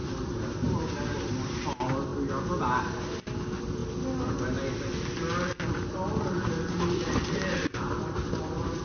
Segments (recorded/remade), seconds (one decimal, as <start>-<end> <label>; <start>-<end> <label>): 0.0-1.6 remade; 1.6-8.8 recorded